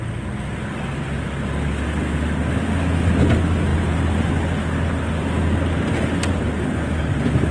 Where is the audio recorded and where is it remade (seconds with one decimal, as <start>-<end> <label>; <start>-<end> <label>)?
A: 0.0-7.5 recorded